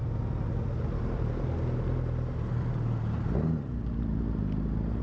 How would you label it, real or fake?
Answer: real